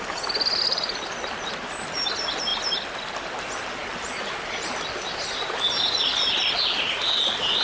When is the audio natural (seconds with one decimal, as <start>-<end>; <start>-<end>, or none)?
0.0-7.6